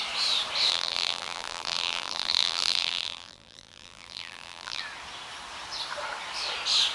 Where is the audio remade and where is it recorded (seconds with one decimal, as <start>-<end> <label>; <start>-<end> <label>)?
0.0-0.7 recorded; 0.7-4.8 remade; 4.8-6.9 recorded